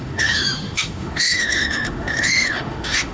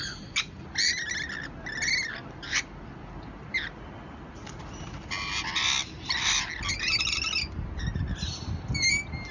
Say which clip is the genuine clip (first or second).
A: second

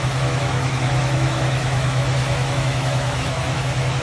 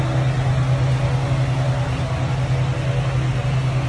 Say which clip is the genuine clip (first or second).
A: second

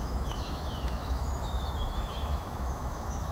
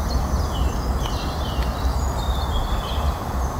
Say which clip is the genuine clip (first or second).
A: second